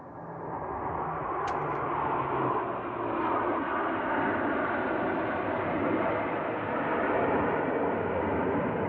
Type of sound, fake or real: real